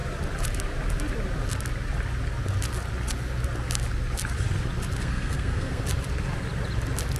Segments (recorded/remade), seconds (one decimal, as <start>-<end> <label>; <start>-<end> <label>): 0.0-5.0 recorded; 5.0-5.8 remade; 5.8-7.2 recorded